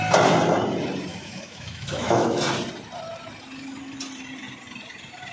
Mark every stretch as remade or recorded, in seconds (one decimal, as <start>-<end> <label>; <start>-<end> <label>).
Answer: 0.0-1.1 recorded; 1.1-2.4 remade; 2.4-5.3 recorded

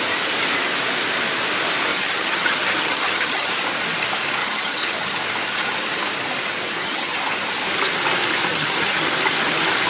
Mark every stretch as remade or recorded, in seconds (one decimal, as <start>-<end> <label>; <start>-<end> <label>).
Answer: 0.0-1.9 recorded; 1.9-3.5 remade; 3.5-4.4 recorded; 4.4-5.2 remade; 5.2-6.8 recorded; 6.8-7.3 remade; 7.3-8.5 recorded; 8.5-9.1 remade; 9.1-9.9 recorded

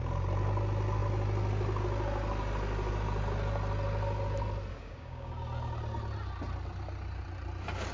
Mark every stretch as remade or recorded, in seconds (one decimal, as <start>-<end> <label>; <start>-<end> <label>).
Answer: 0.0-4.7 recorded; 4.7-5.3 remade; 5.3-7.9 recorded

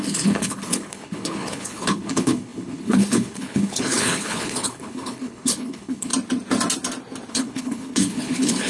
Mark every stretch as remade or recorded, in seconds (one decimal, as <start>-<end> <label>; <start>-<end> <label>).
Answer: 0.0-6.1 remade; 6.1-7.3 recorded; 7.3-8.7 remade

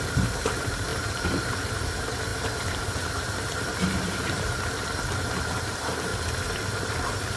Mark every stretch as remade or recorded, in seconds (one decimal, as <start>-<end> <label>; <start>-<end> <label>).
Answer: 0.0-6.1 remade; 6.1-6.9 recorded; 6.9-7.4 remade

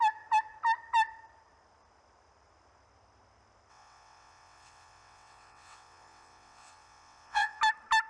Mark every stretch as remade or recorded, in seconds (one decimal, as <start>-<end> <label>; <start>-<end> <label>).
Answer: 0.0-3.7 recorded; 3.7-7.6 remade; 7.6-8.1 recorded